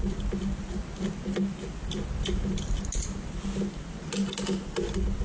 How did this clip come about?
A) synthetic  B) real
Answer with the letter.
B